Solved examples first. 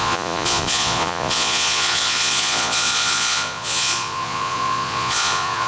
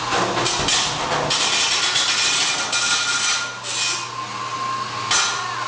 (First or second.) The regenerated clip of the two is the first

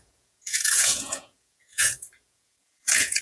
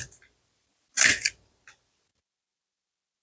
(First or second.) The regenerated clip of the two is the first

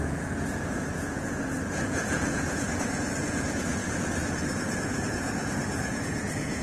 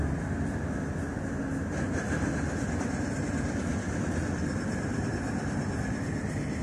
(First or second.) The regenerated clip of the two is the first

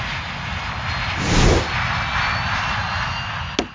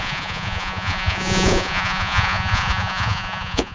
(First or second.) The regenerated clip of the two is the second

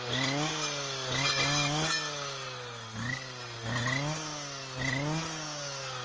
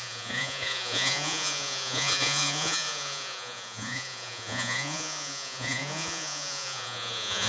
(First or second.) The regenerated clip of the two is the second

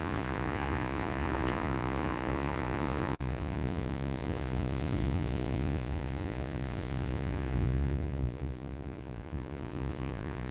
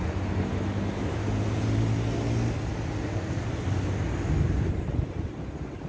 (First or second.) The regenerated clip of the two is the first